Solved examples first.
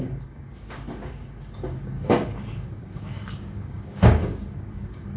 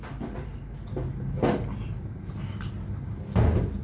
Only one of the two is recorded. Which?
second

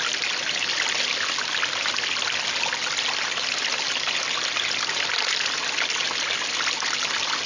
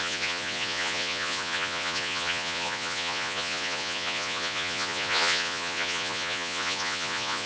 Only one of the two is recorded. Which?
first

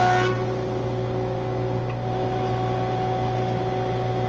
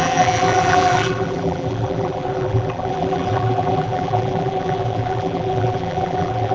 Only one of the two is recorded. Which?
first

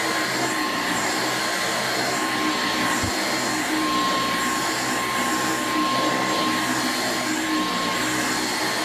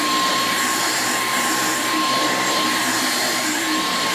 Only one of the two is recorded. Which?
first